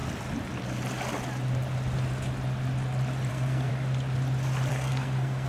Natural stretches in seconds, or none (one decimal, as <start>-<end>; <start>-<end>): 0.0-3.3; 3.7-4.7